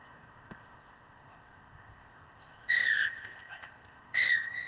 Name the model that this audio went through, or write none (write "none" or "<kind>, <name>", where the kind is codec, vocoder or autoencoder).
codec, ZipCodec